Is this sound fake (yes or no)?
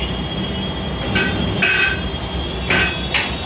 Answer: no